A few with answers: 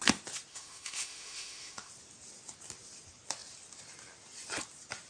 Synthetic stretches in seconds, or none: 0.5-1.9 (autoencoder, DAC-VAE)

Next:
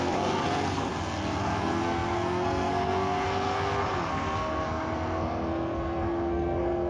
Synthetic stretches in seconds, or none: 0.0-0.9 (codec, SNAC); 1.4-6.9